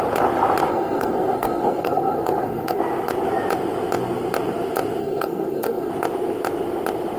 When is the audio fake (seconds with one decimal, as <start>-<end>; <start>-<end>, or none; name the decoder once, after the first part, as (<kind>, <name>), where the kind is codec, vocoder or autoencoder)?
0.7-2.8 (codec, SNAC); 5.0-5.9